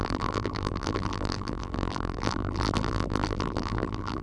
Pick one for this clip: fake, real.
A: fake